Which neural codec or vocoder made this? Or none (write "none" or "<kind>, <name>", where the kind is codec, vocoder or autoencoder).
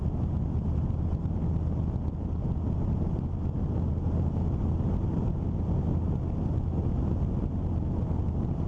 none